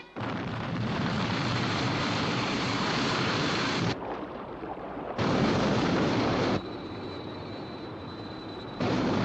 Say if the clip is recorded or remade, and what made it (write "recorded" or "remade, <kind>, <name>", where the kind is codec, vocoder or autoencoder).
remade, vocoder, BigVGAN v2